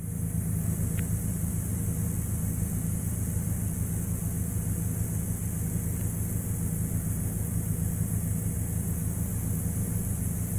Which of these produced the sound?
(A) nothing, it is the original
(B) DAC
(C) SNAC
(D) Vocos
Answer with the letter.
A